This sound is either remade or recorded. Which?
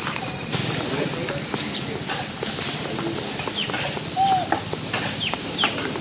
recorded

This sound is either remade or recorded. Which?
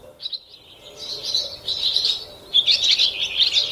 recorded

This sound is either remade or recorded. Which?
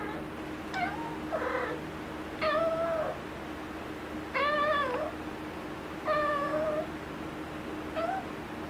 recorded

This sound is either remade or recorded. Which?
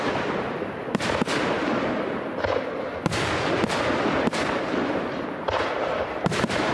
recorded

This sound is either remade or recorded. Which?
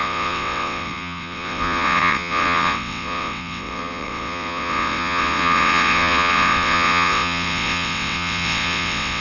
remade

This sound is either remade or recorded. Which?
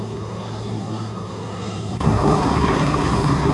remade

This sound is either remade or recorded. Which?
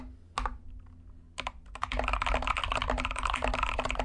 recorded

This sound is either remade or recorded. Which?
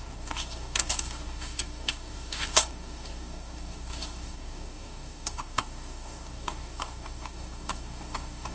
remade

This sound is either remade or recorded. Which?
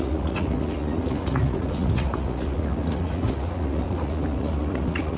remade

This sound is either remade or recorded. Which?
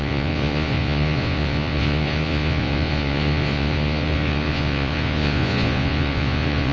remade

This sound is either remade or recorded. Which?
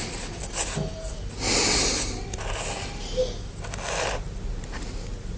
recorded